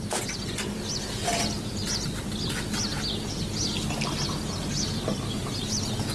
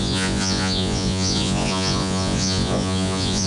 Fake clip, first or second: second